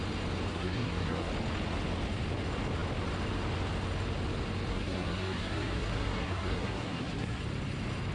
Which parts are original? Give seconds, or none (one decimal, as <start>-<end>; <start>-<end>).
0.0-0.5; 1.3-4.7; 7.4-8.1